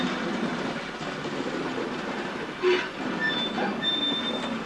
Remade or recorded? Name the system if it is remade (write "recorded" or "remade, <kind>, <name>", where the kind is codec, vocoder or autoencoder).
recorded